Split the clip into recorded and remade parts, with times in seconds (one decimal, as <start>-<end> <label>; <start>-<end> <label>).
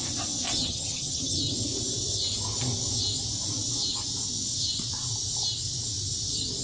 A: 0.0-0.5 recorded; 0.5-1.5 remade; 1.5-6.6 recorded